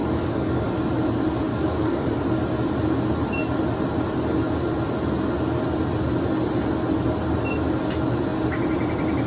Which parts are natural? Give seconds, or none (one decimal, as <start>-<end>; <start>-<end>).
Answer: 0.7-1.5; 2.2-9.3